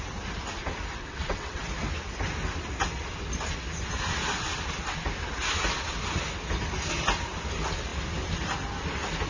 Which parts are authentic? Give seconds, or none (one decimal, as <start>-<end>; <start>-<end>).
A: 0.0-1.0; 1.6-9.3